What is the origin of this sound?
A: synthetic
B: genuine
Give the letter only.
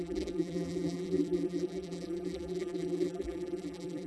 A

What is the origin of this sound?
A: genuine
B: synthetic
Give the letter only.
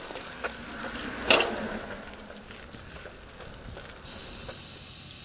A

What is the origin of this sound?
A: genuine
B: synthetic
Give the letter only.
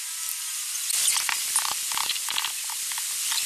A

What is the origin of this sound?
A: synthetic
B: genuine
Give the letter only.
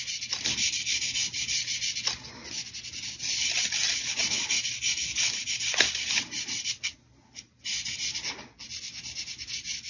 B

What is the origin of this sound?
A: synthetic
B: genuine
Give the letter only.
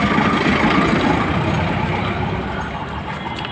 B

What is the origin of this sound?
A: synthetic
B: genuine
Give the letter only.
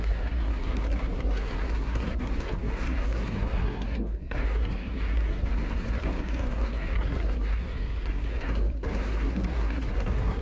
A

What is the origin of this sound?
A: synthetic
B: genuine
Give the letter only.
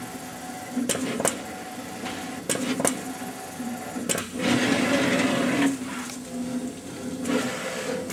B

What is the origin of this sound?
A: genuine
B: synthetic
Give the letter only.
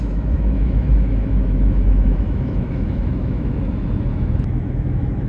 B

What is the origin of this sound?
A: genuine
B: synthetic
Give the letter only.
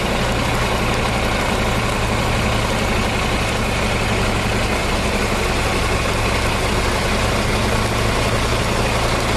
A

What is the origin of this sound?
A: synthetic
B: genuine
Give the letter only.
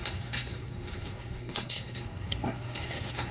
A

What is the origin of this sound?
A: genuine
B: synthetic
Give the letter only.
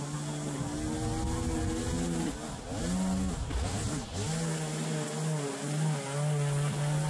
A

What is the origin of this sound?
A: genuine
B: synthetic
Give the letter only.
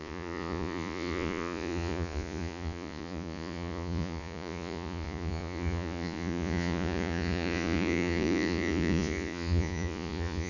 B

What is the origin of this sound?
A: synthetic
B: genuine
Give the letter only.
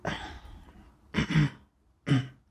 B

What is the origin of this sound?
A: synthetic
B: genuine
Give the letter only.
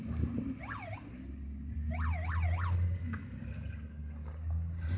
B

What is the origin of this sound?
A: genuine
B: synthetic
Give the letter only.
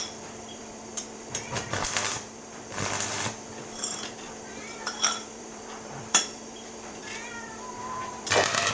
B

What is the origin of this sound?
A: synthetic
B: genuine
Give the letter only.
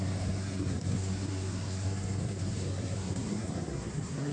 A